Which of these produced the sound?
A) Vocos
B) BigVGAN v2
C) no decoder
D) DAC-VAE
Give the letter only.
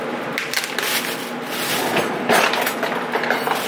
C